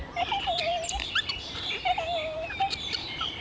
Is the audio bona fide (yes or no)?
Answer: yes